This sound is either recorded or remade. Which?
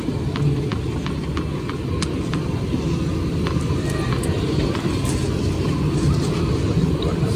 recorded